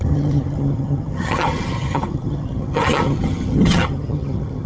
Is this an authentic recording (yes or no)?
no